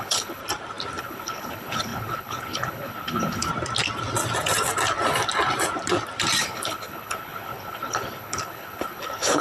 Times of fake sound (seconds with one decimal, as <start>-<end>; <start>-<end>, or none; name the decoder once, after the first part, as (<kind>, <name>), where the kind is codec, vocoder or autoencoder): 0.0-0.4 (codec, HILCodec); 1.0-3.5; 6.4-9.4